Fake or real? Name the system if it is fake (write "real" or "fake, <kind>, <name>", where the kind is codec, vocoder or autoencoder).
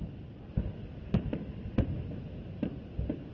real